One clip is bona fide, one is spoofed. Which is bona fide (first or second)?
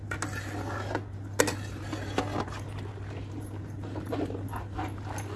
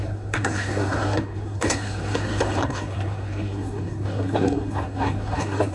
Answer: first